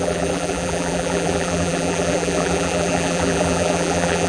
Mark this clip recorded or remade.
remade